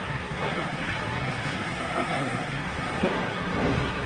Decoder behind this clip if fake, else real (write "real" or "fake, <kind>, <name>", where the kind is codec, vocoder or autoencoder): fake, codec, SNAC